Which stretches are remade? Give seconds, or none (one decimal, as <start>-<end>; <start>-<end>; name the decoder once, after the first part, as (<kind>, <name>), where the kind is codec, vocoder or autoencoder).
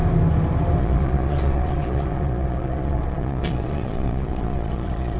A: 0.8-5.2 (vocoder, Vocos)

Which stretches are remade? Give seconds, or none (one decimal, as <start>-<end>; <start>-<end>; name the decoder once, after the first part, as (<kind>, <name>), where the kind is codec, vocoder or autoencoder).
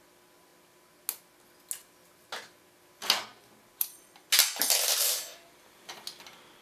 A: none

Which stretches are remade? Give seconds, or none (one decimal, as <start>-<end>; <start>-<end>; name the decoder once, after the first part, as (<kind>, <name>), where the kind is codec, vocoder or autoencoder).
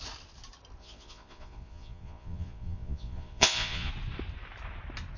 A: 0.8-3.9 (vocoder, Vocos)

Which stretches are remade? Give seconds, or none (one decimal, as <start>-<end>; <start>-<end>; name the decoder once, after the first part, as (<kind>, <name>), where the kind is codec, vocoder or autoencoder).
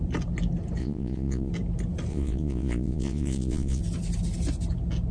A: 0.8-1.5 (vocoder, Vocos); 2.1-3.8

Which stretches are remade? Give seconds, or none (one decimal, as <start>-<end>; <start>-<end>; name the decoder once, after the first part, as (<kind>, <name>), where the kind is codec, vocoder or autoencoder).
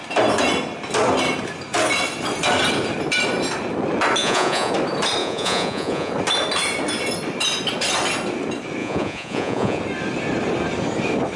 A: 4.2-4.7 (vocoder, Vocos); 5.2-6.1; 8.8-9.8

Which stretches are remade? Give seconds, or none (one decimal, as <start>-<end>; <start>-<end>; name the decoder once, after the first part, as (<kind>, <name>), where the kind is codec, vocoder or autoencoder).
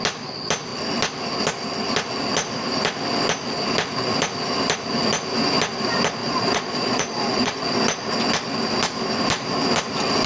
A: 6.2-7.8 (vocoder, Vocos)